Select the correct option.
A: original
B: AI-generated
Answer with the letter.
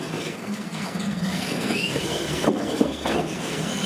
B